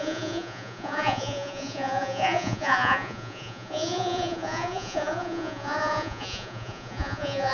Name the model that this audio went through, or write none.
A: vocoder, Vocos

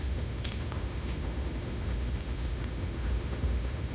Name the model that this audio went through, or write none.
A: autoencoder, DAC-VAE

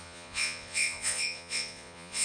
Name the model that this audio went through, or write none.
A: vocoder, Vocos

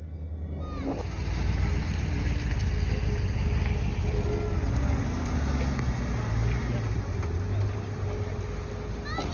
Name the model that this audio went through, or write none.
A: none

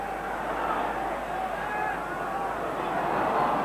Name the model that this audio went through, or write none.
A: none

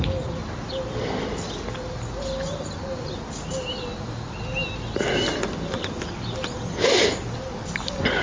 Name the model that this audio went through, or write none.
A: none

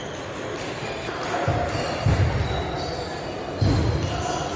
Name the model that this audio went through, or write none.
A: none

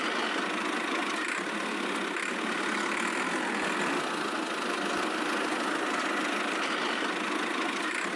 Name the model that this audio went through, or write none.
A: none